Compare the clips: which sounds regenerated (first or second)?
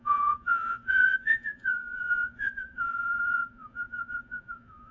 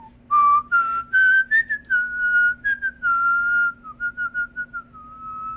first